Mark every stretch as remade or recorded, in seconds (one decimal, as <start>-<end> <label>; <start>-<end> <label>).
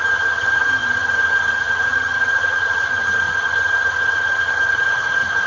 0.0-5.5 remade